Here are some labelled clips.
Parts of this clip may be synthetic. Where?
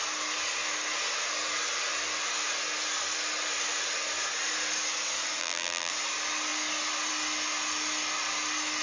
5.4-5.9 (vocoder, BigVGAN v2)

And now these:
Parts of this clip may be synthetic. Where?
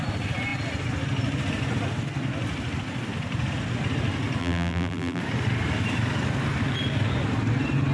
4.4-5.2 (vocoder, BigVGAN v2)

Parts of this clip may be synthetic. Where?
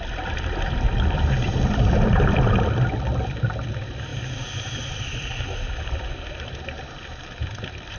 0.0-4.1 (vocoder, BigVGAN v2); 4.9-8.0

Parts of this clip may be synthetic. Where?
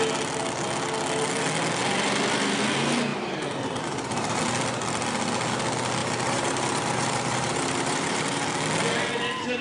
3.1-4.4 (vocoder, BigVGAN v2); 6.0-8.5